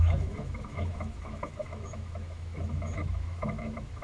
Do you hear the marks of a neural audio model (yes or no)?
yes